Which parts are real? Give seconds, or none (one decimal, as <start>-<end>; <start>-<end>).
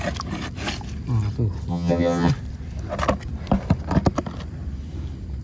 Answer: 0.0-1.7; 2.3-5.4